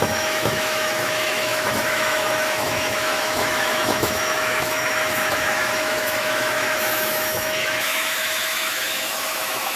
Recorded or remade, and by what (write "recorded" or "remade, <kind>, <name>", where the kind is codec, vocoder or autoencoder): remade, autoencoder, DAC-VAE